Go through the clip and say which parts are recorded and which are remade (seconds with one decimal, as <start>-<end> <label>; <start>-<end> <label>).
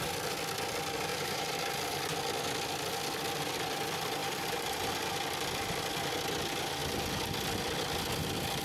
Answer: 0.0-1.1 recorded; 1.1-1.7 remade; 1.7-4.2 recorded; 4.2-4.9 remade; 4.9-8.6 recorded